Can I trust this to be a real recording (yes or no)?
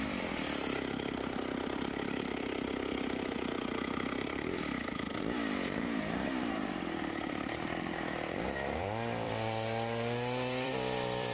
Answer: no